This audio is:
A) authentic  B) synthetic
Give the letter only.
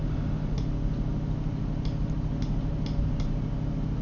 A